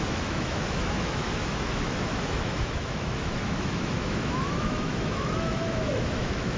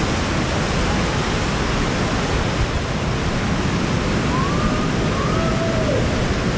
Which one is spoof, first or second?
first